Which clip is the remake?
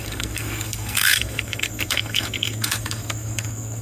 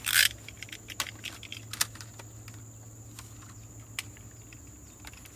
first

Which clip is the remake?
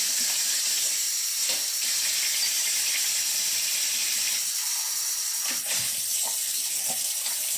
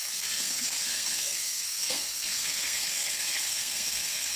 second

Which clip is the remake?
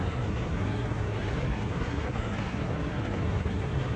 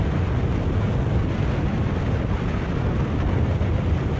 first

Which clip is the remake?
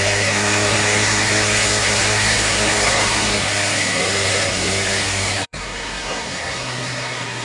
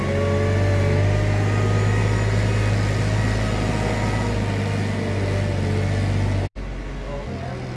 first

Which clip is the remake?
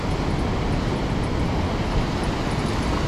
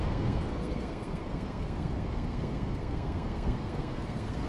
second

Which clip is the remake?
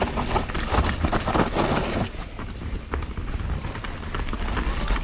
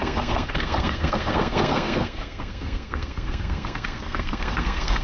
second